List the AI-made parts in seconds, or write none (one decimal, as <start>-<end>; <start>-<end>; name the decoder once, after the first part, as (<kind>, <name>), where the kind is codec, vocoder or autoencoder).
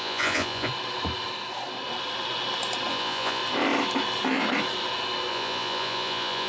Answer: 0.0-0.7 (vocoder, Vocos); 2.9-3.4; 5.3-6.5